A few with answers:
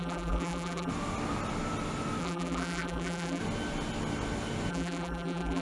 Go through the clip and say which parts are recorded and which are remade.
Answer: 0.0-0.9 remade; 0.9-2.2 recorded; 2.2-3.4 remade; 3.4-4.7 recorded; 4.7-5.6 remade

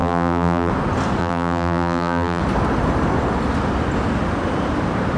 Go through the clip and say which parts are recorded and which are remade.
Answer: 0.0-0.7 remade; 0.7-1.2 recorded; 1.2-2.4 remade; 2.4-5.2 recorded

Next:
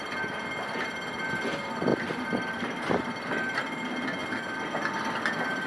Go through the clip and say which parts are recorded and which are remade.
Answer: 0.0-1.9 recorded; 1.9-3.8 remade; 3.8-5.7 recorded

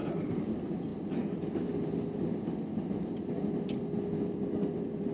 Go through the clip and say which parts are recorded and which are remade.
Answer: 0.0-0.5 remade; 0.5-5.1 recorded

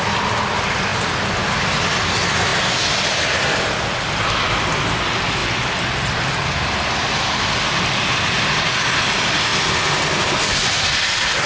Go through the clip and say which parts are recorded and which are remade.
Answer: 0.0-2.5 recorded; 2.5-4.1 remade; 4.1-5.4 recorded; 5.4-8.0 remade; 8.0-9.5 recorded; 9.5-11.5 remade